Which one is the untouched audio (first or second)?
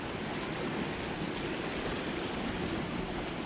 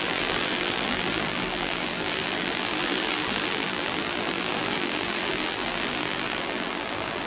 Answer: first